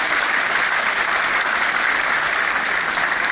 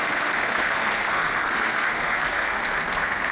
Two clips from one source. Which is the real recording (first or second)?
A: first